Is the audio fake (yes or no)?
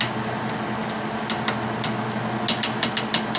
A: no